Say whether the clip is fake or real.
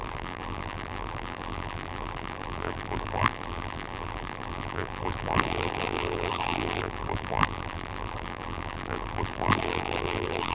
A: fake